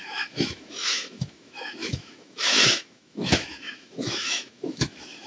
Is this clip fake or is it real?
fake